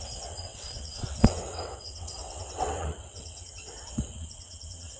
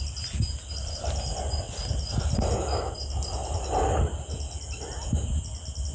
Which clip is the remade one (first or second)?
first